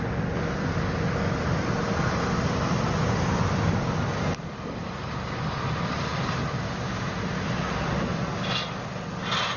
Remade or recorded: recorded